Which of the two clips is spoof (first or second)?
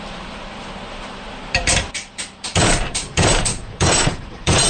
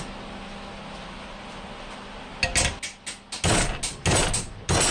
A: first